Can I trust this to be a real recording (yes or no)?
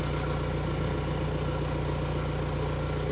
yes